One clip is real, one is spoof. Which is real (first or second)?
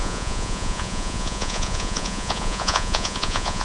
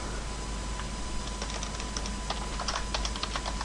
second